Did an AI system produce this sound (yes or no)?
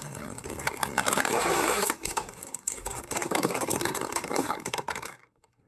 yes